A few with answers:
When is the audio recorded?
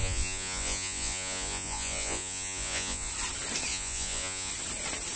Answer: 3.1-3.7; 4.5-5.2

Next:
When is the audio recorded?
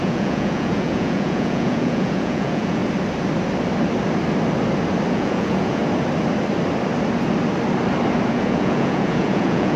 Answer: 2.8-5.1; 5.8-8.3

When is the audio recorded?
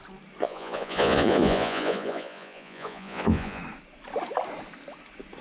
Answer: 0.0-0.4; 3.6-5.4